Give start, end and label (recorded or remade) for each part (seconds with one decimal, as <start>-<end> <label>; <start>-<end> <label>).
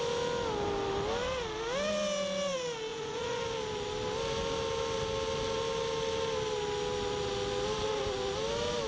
0.0-2.9 recorded; 2.9-3.4 remade; 3.4-8.9 recorded